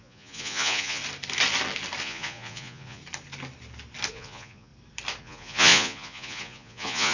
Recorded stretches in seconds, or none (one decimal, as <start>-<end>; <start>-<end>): 1.0-2.0; 3.0-4.1; 4.7-5.2